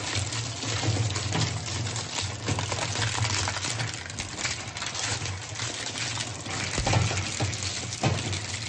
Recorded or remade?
recorded